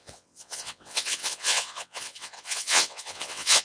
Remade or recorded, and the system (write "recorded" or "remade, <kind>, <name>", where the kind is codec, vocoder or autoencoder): remade, vocoder, WaveNeXt